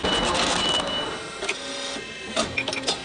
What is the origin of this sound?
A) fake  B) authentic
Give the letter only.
B